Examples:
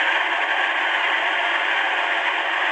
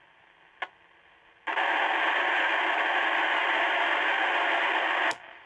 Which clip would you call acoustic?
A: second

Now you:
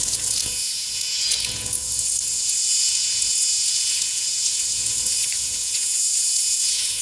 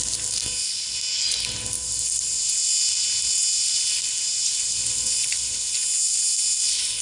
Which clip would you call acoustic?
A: second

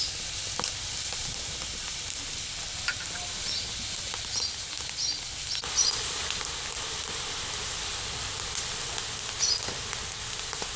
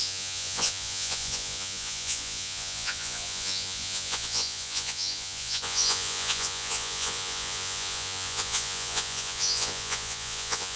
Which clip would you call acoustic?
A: first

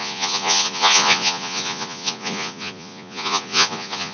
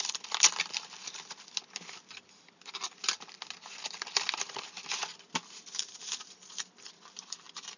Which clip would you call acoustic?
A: second